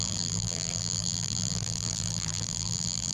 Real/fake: fake